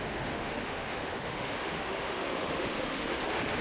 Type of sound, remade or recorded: remade